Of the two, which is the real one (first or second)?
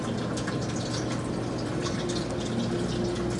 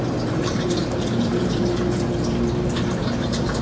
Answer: first